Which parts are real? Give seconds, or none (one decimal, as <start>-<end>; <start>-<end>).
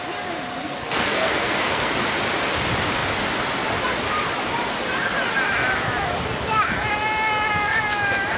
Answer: 0.0-0.6; 1.9-8.4